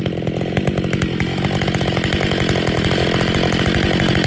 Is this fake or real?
real